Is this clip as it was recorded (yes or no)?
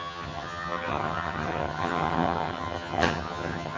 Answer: no